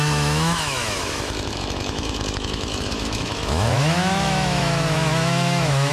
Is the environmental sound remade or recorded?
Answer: remade